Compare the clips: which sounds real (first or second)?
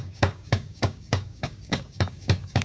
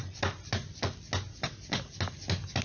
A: second